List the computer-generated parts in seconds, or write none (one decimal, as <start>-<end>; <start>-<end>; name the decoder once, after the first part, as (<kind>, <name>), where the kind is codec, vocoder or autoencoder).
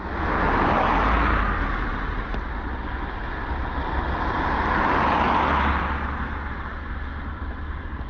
none